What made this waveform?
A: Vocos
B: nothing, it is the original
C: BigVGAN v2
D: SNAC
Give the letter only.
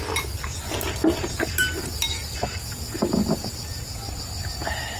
B